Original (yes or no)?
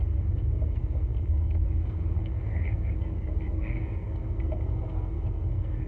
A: no